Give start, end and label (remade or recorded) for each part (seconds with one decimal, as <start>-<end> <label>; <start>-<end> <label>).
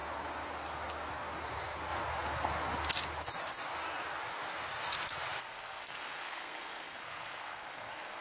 0.0-5.4 recorded; 5.4-8.2 remade